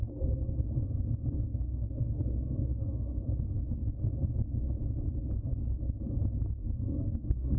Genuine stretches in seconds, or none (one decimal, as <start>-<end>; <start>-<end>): 0.0-1.5; 3.2-6.6